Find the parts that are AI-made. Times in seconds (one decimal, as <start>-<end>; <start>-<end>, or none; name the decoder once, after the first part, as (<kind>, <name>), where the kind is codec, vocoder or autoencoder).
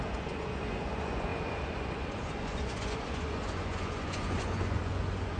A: 0.0-5.4 (vocoder, Vocos)